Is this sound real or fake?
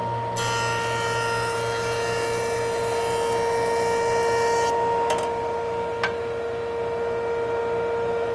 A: real